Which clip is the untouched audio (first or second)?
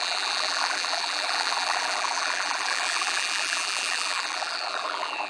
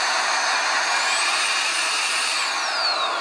second